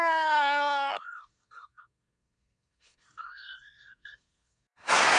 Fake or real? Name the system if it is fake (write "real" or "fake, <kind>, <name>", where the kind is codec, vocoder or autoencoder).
fake, codec, SNAC